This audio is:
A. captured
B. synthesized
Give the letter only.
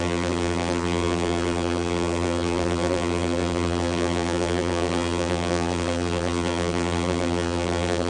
B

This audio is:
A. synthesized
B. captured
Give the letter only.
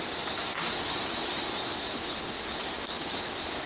A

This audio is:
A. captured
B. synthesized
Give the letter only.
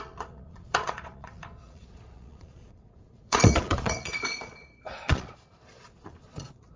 B